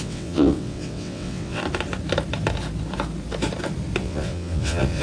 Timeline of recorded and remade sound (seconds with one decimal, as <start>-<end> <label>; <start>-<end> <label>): 0.0-1.6 remade; 1.6-4.0 recorded; 4.0-5.0 remade